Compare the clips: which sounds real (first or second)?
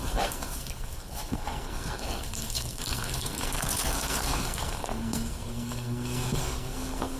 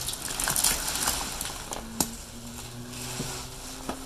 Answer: second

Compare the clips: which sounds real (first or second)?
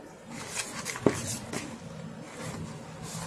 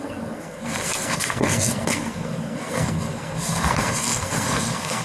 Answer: first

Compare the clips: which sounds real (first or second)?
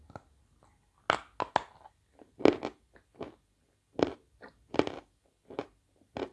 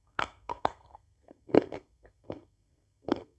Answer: first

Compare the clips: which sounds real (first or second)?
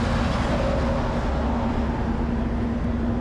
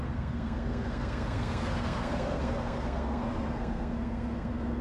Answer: first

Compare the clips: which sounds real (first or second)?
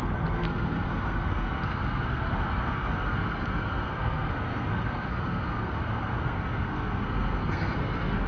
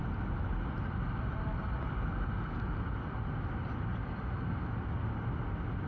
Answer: second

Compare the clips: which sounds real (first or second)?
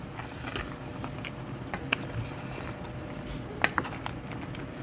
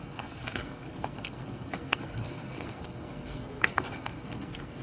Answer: first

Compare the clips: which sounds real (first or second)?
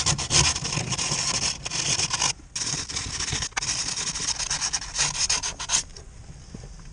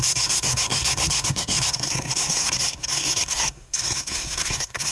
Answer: first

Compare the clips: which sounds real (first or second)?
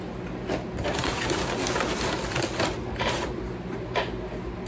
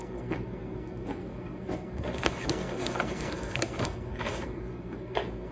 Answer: first